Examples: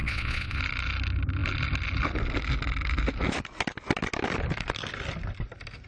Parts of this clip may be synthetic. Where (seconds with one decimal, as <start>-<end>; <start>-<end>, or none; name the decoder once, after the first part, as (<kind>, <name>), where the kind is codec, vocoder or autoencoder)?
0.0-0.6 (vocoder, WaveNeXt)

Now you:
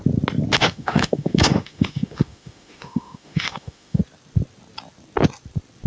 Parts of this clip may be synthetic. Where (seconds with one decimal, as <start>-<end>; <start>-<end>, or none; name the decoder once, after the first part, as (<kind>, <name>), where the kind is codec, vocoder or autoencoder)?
0.6-4.0 (autoencoder, DAC-VAE)

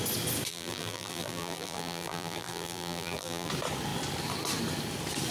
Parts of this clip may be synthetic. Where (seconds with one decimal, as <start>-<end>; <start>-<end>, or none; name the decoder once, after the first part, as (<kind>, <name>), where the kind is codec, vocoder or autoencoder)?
0.5-3.5 (vocoder, BigVGAN v2)

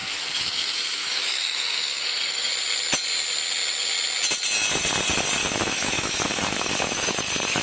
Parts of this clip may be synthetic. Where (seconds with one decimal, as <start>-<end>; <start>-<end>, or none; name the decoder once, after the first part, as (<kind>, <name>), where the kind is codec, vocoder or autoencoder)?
0.0-2.5 (autoencoder, DAC-VAE); 5.4-7.6

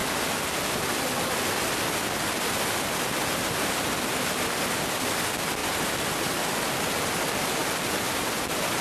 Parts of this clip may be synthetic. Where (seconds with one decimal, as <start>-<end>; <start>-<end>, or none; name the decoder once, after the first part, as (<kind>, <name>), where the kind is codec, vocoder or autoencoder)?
5.6-6.2 (vocoder, BigVGAN v2)